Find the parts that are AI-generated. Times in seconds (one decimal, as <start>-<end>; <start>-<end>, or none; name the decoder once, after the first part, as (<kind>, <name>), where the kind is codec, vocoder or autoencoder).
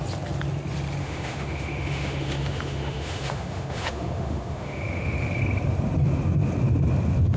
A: 1.0-5.4 (autoencoder, DAC-VAE)